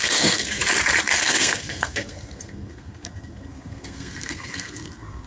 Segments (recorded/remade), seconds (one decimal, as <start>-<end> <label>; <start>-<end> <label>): 0.0-0.6 remade; 0.6-1.1 recorded; 1.1-5.3 remade